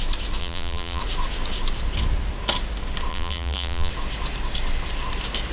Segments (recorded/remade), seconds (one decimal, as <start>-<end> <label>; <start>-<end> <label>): 0.0-0.4 recorded; 0.4-1.0 remade; 1.0-3.1 recorded; 3.1-3.9 remade; 3.9-5.5 recorded